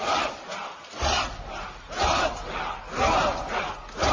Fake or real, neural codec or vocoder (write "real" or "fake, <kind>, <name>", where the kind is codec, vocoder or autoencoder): real